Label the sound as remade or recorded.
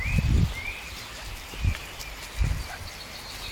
recorded